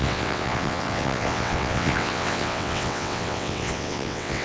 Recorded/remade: remade